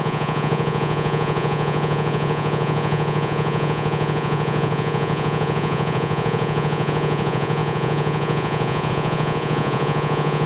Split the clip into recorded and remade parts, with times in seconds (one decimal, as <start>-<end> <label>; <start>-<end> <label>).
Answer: 0.0-10.5 remade